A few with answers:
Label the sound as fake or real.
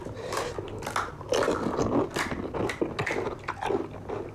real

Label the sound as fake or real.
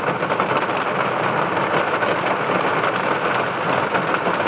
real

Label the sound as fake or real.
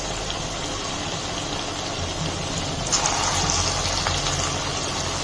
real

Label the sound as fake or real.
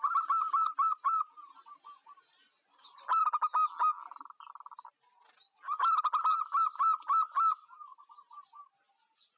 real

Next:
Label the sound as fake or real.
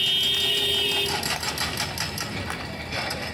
real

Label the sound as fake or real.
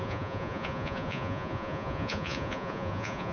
fake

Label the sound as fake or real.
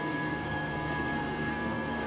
fake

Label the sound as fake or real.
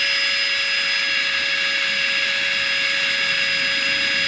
real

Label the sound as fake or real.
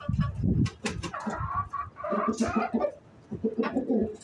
real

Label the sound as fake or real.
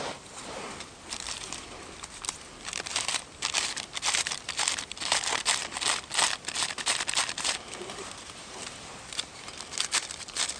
fake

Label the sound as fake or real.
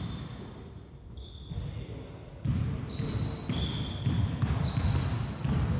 real